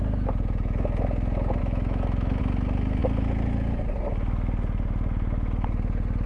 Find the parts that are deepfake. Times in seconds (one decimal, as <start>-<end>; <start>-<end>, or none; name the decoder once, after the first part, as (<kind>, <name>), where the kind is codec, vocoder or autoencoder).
1.6-2.4 (autoencoder, DAC-VAE)